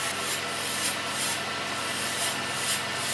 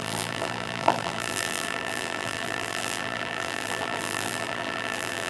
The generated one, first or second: second